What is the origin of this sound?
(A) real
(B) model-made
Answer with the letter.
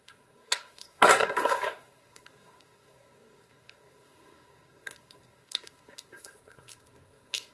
B